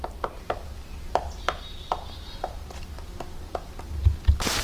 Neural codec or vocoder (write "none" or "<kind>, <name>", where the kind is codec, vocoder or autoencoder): none